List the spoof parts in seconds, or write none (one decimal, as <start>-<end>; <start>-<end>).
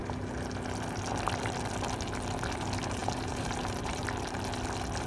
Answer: 3.0-4.0